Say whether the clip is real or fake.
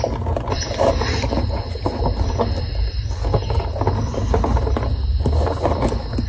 real